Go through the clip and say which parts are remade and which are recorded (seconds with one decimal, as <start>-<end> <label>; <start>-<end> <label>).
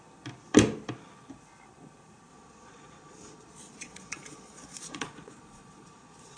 0.0-2.3 recorded; 2.3-6.4 remade